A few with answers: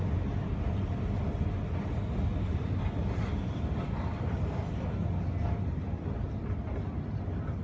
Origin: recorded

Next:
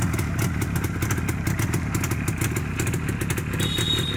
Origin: recorded